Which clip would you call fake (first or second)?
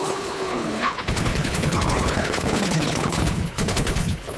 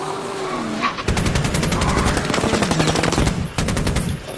first